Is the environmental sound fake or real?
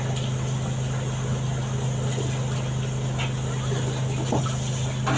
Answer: real